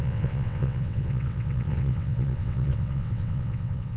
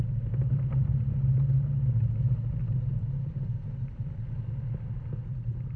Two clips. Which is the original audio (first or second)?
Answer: second